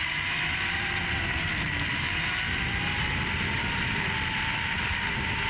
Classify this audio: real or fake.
real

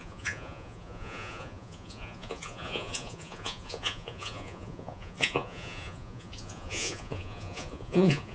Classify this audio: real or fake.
fake